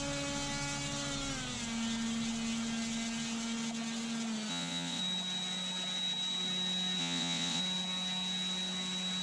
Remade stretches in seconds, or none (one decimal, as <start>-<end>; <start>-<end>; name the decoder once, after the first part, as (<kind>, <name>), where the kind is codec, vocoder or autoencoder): 4.5-5.0 (vocoder, WaveNeXt); 7.0-7.6